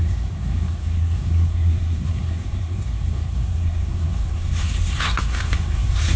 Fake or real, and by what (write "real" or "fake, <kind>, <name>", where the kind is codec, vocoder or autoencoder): fake, codec, SNAC